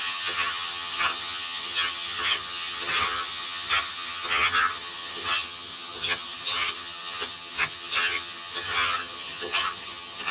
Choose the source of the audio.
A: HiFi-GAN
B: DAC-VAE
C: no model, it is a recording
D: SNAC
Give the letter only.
A